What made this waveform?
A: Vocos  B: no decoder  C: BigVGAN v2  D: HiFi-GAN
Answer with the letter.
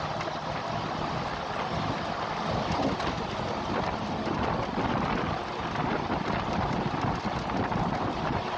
B